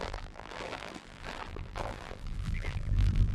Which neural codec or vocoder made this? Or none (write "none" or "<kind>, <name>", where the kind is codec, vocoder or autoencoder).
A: vocoder, BigVGAN v2